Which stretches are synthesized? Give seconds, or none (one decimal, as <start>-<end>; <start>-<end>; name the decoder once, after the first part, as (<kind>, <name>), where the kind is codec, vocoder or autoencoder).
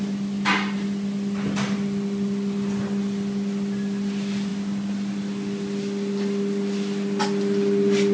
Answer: none